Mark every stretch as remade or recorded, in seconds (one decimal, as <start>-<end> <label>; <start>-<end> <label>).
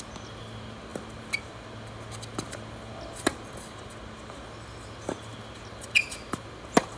0.0-7.0 recorded